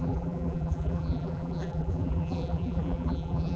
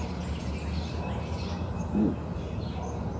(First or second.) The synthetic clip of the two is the first